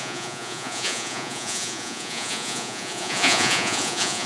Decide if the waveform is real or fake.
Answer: fake